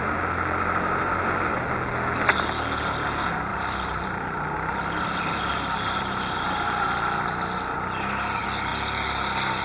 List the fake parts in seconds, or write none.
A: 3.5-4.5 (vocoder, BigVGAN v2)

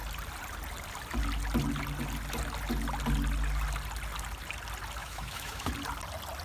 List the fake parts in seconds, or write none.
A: 5.0-5.7 (autoencoder, DAC-VAE)

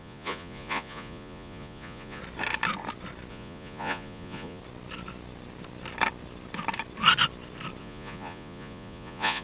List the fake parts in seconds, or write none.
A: 0.0-2.2 (vocoder, Vocos); 3.3-4.6; 7.8-9.4